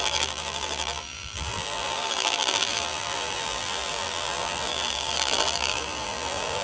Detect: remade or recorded remade